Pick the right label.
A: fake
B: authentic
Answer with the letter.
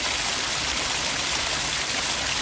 B